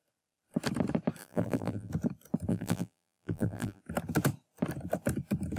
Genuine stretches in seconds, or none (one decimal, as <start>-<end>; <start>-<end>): 0.0-1.2; 1.9-2.5; 3.8-5.6